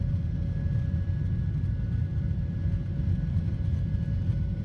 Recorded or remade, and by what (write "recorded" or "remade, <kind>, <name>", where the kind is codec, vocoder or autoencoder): recorded